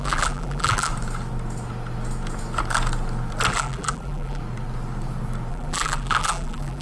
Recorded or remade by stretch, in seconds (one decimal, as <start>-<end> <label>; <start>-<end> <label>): 0.0-0.9 remade; 0.9-3.5 recorded; 3.5-4.4 remade; 4.4-5.5 recorded; 5.5-6.8 remade